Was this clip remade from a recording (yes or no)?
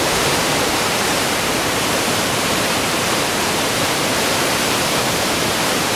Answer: yes